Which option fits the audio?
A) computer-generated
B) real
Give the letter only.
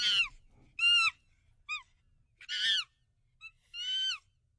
B